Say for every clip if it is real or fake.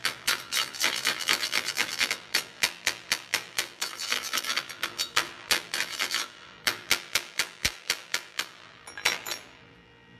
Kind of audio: fake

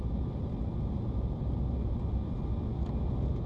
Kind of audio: real